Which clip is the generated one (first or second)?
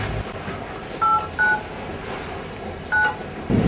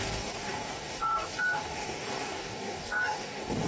second